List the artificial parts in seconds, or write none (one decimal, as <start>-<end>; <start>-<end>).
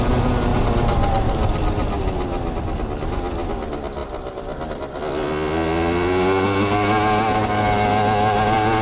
none